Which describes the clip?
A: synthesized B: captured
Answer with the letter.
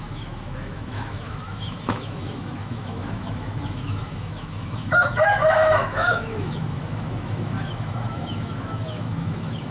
A